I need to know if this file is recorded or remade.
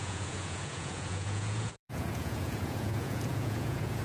remade